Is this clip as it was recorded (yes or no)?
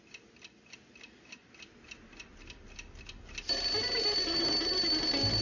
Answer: yes